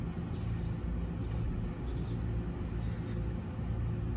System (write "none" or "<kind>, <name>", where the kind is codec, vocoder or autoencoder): none